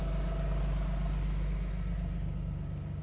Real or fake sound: real